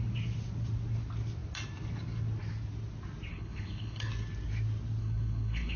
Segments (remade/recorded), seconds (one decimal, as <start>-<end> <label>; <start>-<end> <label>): 0.0-3.3 recorded; 3.3-4.1 remade; 4.1-5.0 recorded; 5.0-5.8 remade